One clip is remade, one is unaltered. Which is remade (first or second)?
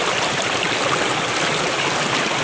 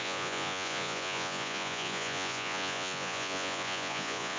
second